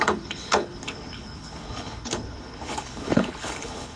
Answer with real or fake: fake